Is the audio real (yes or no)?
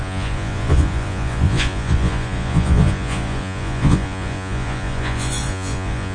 no